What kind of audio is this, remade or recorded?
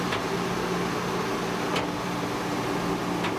recorded